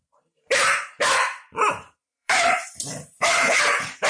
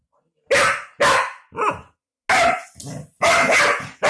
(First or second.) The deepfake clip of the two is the first